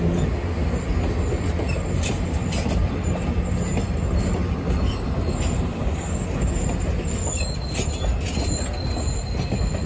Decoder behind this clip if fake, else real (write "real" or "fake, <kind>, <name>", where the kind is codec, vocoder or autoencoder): real